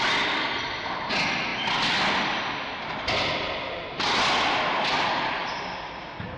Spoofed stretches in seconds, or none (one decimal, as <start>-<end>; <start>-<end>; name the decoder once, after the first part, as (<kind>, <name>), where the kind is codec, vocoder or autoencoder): none